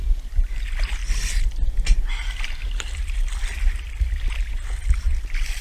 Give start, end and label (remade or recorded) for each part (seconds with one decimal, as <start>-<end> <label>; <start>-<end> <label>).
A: 0.0-5.6 recorded